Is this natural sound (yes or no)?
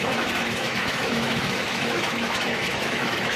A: no